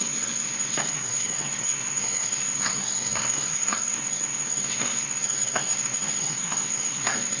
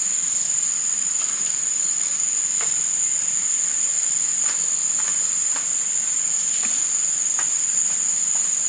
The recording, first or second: second